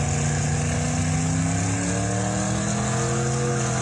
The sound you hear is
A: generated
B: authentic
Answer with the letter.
B